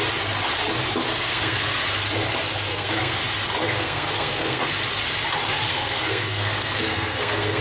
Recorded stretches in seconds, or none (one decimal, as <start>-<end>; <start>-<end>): 0.0-1.1; 1.8-2.7; 3.2-3.6; 4.7-5.7